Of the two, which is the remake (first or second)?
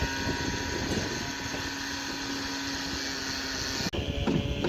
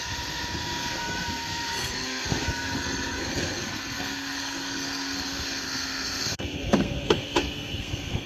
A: second